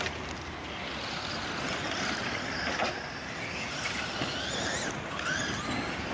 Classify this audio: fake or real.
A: real